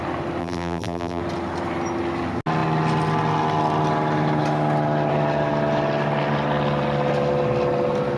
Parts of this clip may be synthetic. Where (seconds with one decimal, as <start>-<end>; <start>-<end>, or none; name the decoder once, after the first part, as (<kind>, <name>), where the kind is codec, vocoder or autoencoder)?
0.4-1.2 (vocoder, BigVGAN v2)